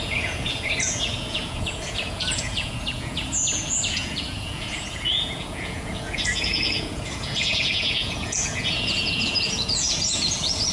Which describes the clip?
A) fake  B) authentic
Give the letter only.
A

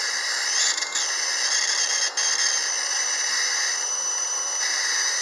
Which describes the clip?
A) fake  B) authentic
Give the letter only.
B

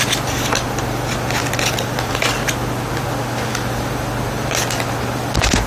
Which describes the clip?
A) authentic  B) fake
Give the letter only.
A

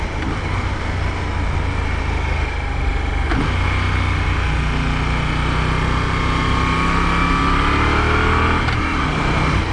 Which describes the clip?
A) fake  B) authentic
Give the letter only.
B